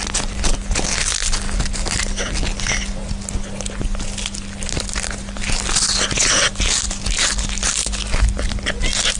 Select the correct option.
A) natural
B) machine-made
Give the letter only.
A